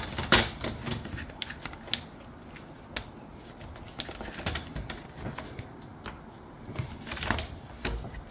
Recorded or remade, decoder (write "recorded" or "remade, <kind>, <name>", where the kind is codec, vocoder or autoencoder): recorded